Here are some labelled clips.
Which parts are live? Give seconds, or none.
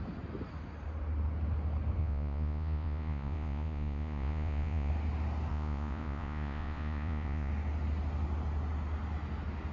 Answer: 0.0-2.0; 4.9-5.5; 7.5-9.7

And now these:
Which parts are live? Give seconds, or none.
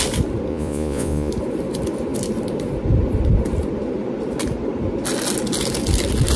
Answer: 0.0-0.5; 1.3-6.4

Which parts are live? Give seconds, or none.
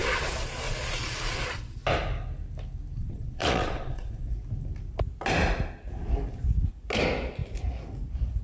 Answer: 1.8-3.0; 4.4-8.4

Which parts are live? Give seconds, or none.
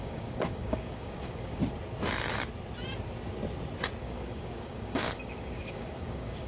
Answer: 1.6-4.0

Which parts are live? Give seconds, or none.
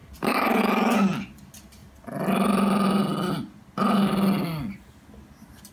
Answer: 1.8-5.2